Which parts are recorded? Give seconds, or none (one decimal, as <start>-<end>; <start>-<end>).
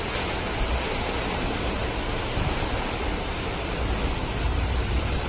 0.0-2.1; 3.4-4.5